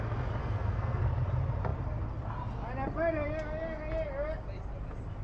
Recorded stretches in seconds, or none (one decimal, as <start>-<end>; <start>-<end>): 0.0-0.4; 1.0-5.2